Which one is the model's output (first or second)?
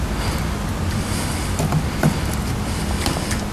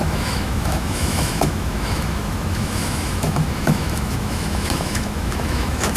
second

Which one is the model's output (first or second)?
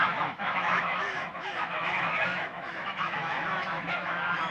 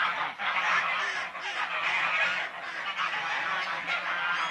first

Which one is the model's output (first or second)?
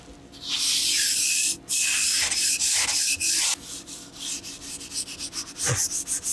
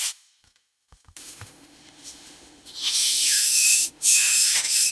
second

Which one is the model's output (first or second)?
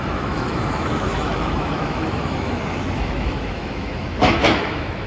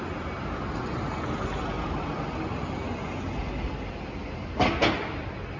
first